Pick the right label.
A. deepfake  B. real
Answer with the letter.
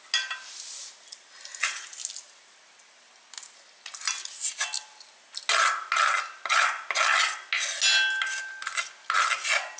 B